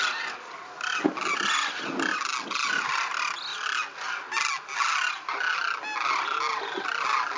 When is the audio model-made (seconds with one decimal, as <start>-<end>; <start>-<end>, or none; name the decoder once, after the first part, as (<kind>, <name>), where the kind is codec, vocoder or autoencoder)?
none